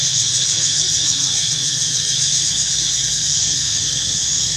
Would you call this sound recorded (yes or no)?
no